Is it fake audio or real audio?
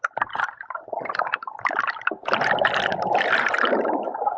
fake